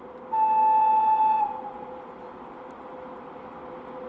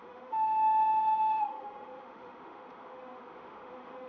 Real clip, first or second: first